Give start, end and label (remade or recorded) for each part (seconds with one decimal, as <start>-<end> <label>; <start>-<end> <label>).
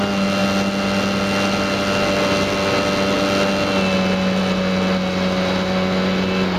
0.0-6.6 recorded